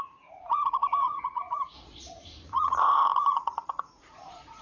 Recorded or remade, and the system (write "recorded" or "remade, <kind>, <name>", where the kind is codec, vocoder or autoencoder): remade, vocoder, Vocos